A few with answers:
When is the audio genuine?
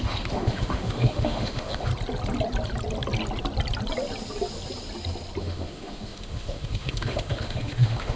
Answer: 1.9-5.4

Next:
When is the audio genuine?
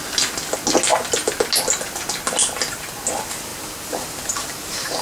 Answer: 0.0-3.5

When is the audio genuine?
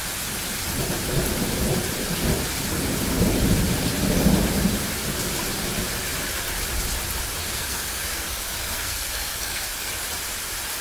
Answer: 0.0-7.4; 9.9-10.8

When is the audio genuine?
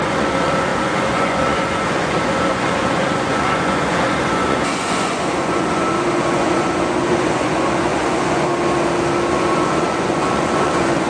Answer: 8.5-9.3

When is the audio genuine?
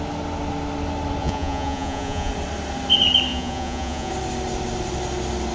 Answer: 0.0-1.2; 2.3-3.3; 4.1-5.5